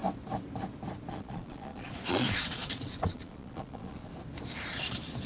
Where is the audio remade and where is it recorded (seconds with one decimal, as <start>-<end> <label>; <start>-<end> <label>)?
0.0-1.1 recorded; 1.1-4.1 remade; 4.1-5.3 recorded